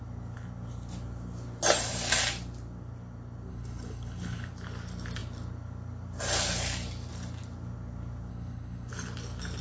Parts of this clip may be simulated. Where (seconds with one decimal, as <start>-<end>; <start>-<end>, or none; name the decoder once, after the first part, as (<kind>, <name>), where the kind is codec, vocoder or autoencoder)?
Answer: 3.5-4.5 (codec, HILCodec); 8.3-8.9